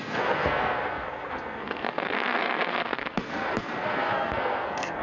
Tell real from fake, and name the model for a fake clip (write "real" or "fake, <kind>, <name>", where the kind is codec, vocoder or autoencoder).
fake, codec, SNAC